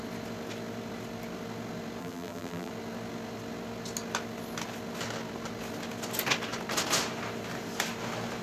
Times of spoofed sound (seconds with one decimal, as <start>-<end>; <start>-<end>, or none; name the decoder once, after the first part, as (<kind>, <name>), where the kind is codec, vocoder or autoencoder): 2.0-2.7 (vocoder, BigVGAN v2)